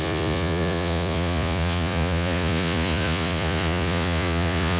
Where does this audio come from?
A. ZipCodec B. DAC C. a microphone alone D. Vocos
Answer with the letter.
D